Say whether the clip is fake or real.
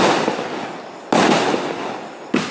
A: real